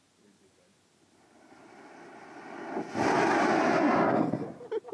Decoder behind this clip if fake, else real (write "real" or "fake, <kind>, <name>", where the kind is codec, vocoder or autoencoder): real